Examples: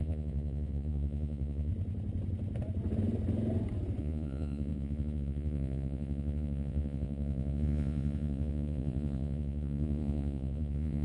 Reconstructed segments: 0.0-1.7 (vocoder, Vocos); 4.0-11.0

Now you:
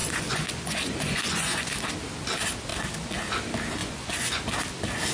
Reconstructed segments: 0.0-1.7 (vocoder, Vocos); 3.8-4.4

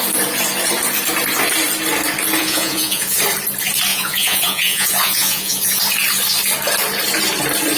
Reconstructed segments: 2.4-3.2 (vocoder, Vocos); 3.9-5.8

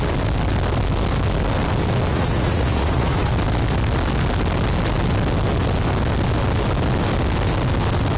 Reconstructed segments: 2.1-3.3 (vocoder, Vocos)

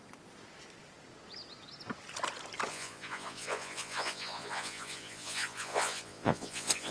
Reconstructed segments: 2.7-6.9 (vocoder, Vocos)

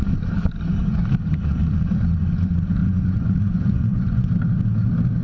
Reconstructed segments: 2.8-4.3 (vocoder, Vocos)

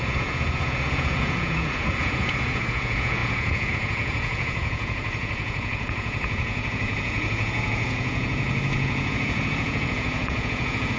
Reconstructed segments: 0.0-11.0 (vocoder, Vocos)

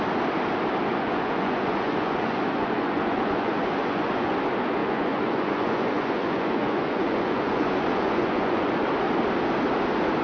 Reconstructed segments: 0.9-4.3 (vocoder, Vocos); 4.8-8.7